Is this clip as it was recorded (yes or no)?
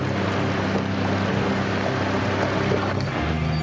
yes